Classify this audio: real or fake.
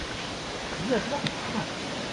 fake